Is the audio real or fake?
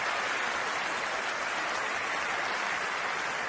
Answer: real